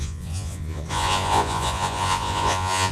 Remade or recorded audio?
remade